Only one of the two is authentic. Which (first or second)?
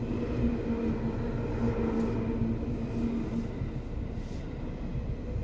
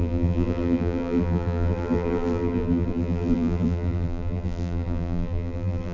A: first